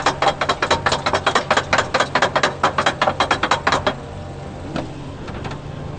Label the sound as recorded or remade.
recorded